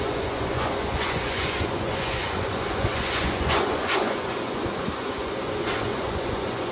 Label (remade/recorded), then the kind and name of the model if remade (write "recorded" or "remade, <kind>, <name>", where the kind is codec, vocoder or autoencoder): remade, vocoder, Vocos